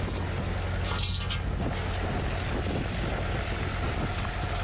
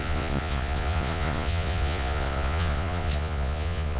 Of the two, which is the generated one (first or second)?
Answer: second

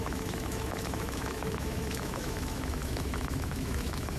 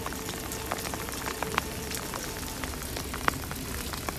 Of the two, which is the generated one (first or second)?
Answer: first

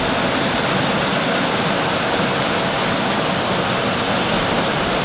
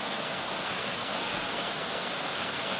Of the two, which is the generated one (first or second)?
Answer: second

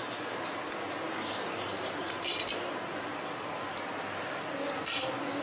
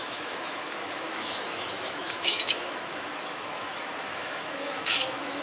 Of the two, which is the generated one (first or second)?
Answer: second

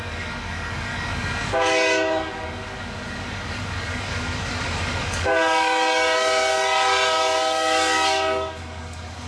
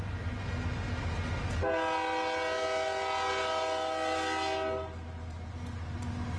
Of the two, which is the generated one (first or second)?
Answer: first